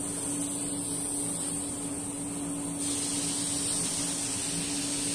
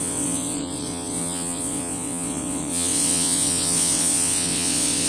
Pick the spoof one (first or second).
second